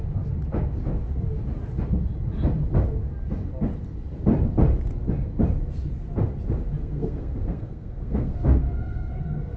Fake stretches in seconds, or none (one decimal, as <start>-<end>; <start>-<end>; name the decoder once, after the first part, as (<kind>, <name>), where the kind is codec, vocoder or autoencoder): 6.8-9.2 (codec, SNAC)